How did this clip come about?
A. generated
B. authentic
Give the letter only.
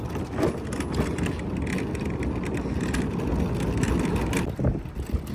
B